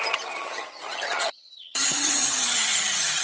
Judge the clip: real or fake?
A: fake